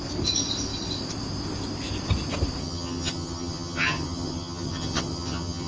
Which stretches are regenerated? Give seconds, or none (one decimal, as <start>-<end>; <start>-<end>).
2.6-5.7

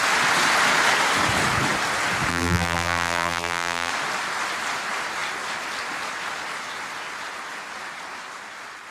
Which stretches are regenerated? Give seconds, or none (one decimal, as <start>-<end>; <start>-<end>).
2.3-3.9

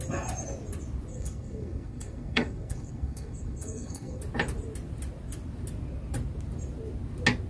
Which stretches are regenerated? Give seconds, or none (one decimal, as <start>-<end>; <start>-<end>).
1.1-4.2

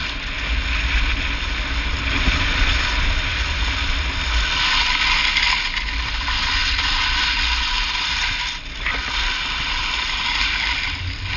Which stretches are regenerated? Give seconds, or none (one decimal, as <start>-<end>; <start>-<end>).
none

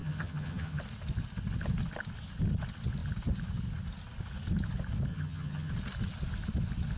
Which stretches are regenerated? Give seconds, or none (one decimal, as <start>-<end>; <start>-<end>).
0.0-0.8; 5.1-5.7

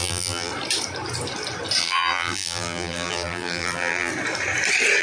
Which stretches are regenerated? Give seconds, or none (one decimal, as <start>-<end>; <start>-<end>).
0.0-0.5; 1.8-4.1

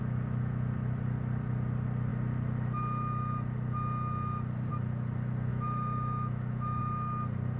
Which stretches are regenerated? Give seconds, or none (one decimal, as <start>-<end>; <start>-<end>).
5.5-6.8